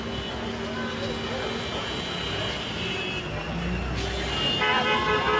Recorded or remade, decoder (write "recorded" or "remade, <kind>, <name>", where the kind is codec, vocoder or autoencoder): recorded